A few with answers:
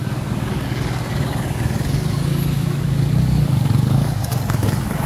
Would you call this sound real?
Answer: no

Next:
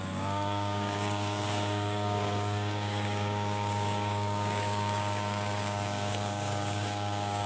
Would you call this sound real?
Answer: no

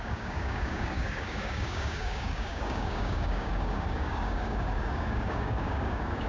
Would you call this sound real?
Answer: no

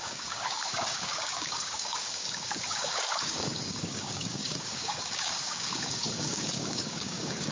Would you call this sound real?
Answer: no